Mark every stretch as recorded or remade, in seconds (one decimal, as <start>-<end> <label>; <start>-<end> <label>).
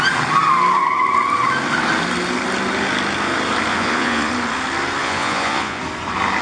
0.0-3.7 recorded; 3.7-4.3 remade; 4.3-5.0 recorded; 5.0-5.8 remade; 5.8-6.4 recorded